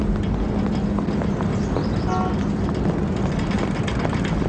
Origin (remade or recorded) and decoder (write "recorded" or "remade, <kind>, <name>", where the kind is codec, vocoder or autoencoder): recorded